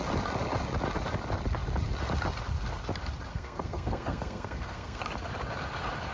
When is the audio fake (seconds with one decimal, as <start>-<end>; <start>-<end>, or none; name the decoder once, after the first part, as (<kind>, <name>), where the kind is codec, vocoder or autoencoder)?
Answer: 3.3-5.0 (codec, SNAC)